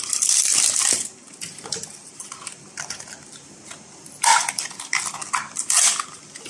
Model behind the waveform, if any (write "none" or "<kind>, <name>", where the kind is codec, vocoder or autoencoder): none